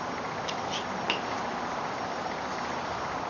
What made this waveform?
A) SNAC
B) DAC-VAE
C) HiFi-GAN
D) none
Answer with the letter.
D